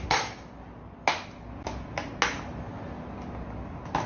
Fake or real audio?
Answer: real